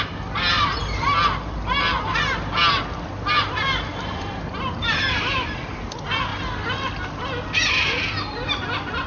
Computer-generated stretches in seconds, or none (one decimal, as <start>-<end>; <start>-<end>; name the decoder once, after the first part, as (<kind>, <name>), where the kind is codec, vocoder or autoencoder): none